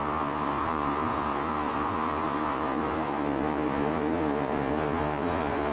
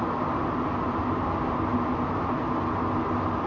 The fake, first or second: first